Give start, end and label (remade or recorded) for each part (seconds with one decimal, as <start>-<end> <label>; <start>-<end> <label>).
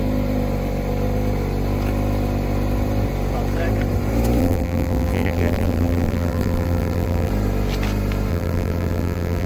0.0-4.4 recorded; 4.4-7.3 remade; 7.3-8.3 recorded; 8.3-9.5 remade